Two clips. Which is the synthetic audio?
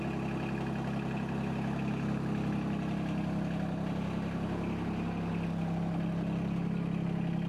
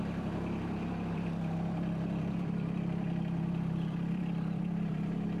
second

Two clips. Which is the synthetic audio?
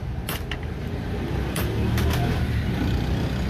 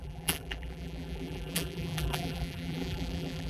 second